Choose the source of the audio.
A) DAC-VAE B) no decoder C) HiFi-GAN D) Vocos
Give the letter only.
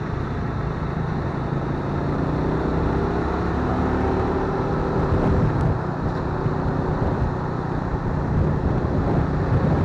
B